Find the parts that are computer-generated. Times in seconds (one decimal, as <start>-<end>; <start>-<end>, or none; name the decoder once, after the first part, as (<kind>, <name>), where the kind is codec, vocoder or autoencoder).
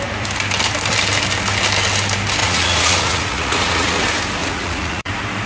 2.4-4.0 (vocoder, Vocos); 4.4-5.1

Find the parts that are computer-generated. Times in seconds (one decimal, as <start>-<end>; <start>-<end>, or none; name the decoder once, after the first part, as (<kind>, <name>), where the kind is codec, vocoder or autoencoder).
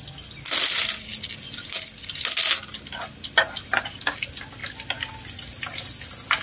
none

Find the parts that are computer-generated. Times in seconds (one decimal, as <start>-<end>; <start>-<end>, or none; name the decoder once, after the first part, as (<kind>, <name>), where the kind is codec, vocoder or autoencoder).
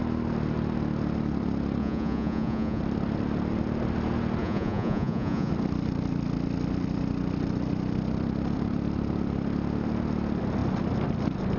1.8-2.8 (vocoder, Vocos); 4.4-5.5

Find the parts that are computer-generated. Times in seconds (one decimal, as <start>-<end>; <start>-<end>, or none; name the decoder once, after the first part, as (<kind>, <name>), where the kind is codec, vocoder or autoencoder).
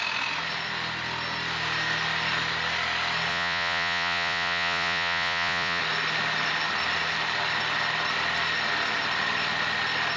3.3-5.8 (vocoder, Vocos)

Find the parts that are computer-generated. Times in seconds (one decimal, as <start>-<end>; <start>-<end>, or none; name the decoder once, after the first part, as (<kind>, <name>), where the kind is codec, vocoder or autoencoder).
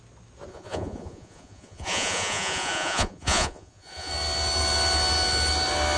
0.5-4.1 (vocoder, Vocos)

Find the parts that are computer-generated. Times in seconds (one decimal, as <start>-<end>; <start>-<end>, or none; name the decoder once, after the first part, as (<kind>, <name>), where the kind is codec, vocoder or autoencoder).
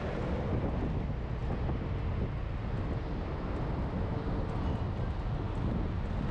none